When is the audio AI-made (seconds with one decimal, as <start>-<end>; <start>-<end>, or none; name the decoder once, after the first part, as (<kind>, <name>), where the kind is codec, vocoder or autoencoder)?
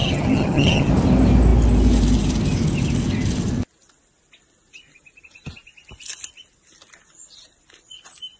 0.0-0.9 (vocoder, HiFi-GAN)